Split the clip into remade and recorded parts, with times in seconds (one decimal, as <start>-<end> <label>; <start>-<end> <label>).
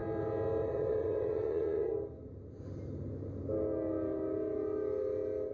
0.0-0.6 recorded; 0.6-1.9 remade; 1.9-5.5 recorded